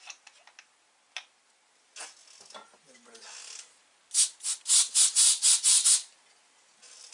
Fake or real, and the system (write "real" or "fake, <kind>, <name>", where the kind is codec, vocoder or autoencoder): real